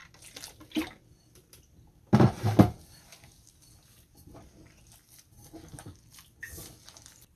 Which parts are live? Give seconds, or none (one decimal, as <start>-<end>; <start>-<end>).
0.0-7.4